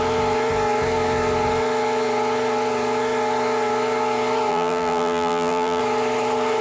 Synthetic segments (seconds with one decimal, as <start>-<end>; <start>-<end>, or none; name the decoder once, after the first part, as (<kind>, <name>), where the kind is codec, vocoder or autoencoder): 4.5-5.8 (vocoder, BigVGAN v2)